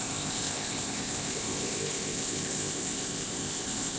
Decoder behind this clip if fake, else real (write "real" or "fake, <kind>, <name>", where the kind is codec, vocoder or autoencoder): fake, codec, ZipCodec